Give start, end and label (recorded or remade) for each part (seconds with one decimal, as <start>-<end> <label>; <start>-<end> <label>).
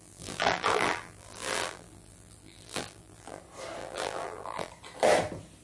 0.0-3.4 remade; 3.4-3.8 recorded; 3.8-4.7 remade; 4.7-5.6 recorded